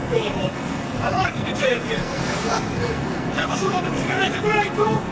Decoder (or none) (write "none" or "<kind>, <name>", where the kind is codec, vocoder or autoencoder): codec, SNAC